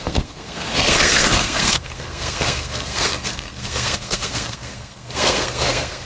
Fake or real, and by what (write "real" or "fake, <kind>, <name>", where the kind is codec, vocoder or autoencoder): fake, codec, SNAC